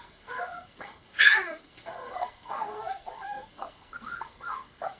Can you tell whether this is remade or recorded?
remade